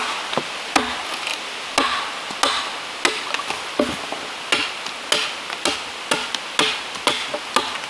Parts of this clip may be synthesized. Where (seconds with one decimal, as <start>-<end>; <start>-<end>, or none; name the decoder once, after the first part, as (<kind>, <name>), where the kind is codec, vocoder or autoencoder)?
none